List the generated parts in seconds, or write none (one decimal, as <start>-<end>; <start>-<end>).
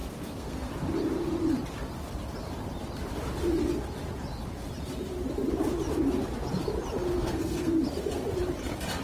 0.0-0.7; 7.1-7.7